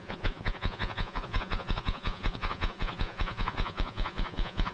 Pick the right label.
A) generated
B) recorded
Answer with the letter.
A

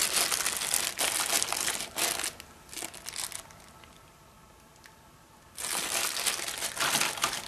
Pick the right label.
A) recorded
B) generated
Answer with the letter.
A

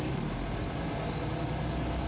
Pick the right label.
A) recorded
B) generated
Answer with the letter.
A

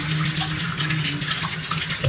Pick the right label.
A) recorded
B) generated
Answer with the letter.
A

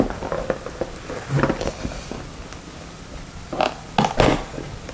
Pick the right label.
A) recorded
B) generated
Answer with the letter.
A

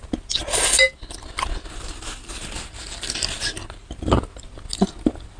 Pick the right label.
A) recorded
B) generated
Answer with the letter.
A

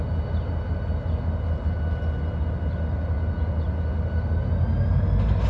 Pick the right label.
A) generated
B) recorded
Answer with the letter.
B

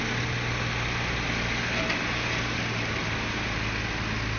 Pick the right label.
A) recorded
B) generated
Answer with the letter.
A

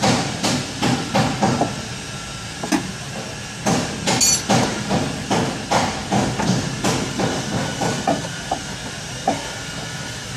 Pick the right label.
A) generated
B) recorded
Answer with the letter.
B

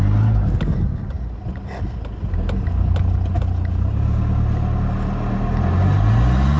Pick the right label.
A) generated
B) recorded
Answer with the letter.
B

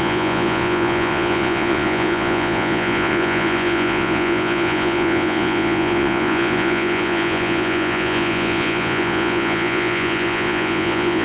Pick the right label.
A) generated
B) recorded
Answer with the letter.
A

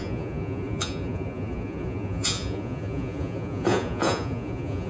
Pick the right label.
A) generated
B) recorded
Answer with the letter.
A